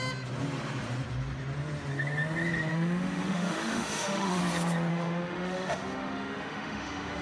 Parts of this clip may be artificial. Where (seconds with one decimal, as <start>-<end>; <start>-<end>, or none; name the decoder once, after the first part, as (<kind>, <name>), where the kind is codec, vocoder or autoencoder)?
2.7-4.4 (autoencoder, DAC-VAE); 4.9-7.2